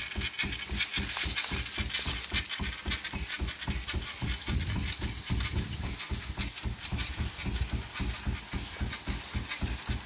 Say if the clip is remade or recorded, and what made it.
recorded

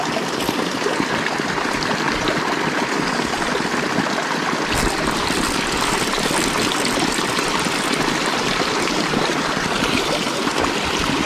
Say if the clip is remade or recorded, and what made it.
recorded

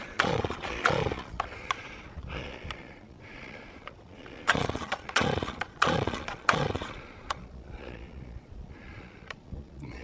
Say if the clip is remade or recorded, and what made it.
remade, vocoder, Vocos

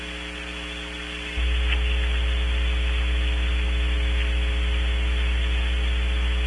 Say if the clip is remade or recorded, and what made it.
recorded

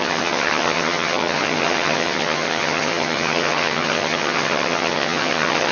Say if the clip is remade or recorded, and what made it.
remade, vocoder, HiFi-GAN